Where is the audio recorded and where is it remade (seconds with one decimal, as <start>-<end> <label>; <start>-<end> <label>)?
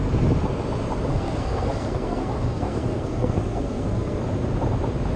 0.0-1.1 recorded; 1.1-4.2 remade; 4.2-5.2 recorded